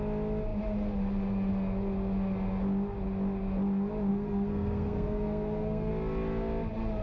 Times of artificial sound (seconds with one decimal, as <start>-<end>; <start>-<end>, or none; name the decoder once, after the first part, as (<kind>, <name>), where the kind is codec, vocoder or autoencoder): 4.1-5.9 (codec, SNAC)